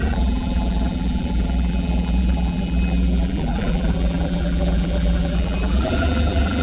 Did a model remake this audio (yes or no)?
yes